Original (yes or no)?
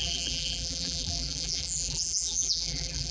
no